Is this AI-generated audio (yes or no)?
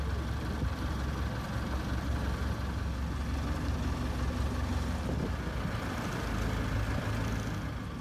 no